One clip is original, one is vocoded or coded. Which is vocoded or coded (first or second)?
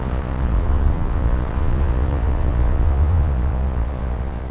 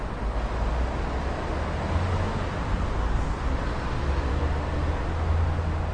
first